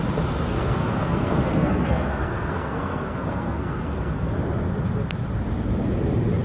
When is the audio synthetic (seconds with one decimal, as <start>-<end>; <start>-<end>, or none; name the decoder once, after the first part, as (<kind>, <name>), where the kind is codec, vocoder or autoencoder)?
0.5-4.3 (codec, SNAC)